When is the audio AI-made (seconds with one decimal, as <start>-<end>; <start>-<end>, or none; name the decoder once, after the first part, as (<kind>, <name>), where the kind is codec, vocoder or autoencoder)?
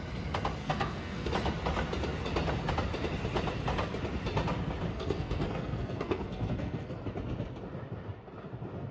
0.6-1.3 (codec, SNAC); 4.9-7.0